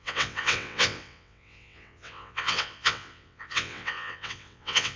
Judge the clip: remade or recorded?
remade